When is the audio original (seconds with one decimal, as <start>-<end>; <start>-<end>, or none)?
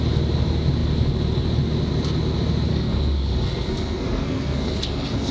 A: 0.0-2.7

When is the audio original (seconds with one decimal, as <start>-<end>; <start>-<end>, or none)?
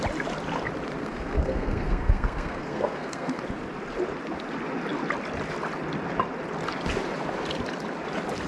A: 0.0-1.0; 3.4-8.5